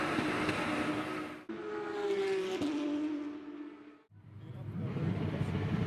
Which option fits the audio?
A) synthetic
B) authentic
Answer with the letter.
B